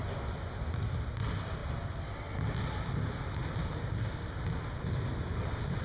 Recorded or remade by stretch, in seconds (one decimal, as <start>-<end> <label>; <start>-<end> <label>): 0.0-5.8 recorded